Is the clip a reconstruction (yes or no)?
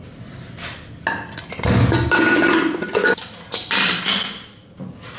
no